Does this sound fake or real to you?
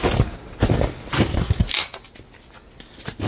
real